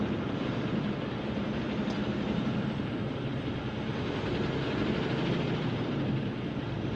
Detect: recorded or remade remade